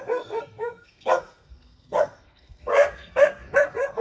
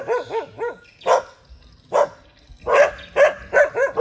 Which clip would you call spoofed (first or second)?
first